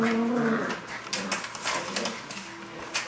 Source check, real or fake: real